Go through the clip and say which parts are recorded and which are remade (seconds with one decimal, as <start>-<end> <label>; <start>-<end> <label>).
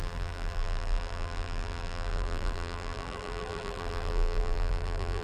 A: 0.0-5.2 remade